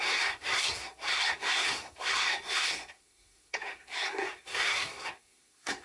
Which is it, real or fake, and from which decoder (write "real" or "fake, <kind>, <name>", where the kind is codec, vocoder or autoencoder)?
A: fake, codec, SNAC